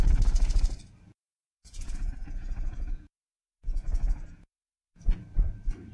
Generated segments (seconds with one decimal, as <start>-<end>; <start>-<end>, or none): 1.5-5.0